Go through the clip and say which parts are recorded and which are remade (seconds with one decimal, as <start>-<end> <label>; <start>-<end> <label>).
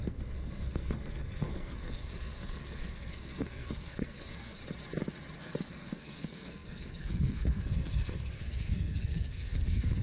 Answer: 0.0-4.6 remade; 4.6-5.4 recorded; 5.4-10.0 remade